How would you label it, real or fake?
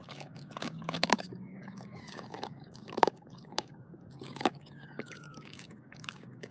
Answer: fake